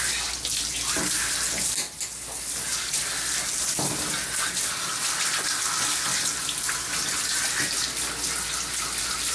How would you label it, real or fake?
real